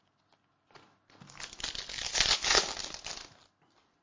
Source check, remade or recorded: recorded